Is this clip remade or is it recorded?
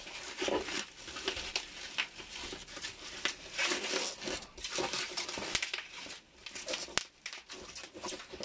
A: recorded